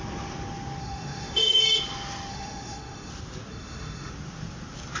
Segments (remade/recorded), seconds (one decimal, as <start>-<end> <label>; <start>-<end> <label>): 0.0-0.8 recorded; 0.8-1.6 remade; 1.6-2.3 recorded; 2.3-3.1 remade; 3.1-3.5 recorded; 3.5-4.1 remade; 4.1-5.0 recorded